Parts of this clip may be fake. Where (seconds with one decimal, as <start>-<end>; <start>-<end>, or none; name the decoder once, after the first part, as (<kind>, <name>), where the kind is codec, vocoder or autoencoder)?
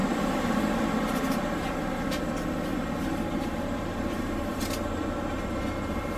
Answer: 0.0-2.2 (vocoder, BigVGAN v2); 2.7-6.2